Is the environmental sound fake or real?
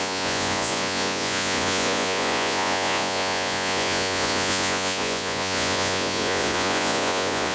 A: fake